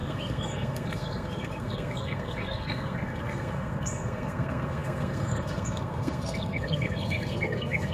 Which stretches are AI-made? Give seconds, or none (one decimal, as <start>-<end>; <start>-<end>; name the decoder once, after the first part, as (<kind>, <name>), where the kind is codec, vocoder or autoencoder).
0.0-7.9 (codec, SNAC)

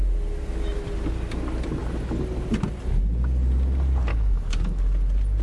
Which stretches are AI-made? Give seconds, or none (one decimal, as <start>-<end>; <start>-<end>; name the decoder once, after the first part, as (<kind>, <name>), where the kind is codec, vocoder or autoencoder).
4.1-4.8 (codec, DAC)